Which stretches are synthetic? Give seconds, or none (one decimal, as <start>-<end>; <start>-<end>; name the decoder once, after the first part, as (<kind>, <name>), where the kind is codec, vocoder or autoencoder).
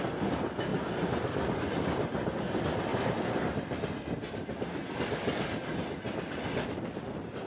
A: 0.7-1.3 (vocoder, BigVGAN v2); 2.9-3.6